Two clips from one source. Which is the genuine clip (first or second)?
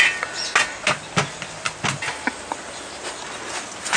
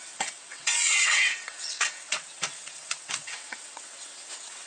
first